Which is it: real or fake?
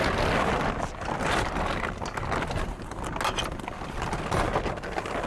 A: real